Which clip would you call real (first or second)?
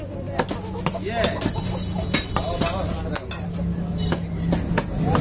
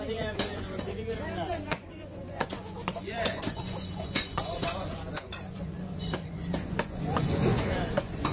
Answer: first